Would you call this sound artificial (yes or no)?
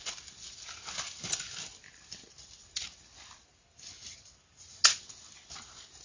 no